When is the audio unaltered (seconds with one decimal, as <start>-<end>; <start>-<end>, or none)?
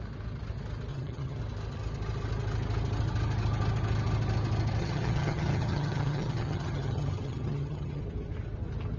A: 0.0-0.9; 1.4-4.8; 8.0-9.0